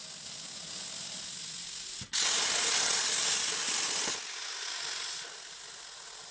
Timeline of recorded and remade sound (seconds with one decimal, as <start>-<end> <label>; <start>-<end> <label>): 0.0-6.3 recorded